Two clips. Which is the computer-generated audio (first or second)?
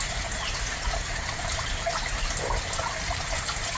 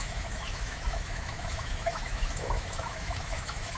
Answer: second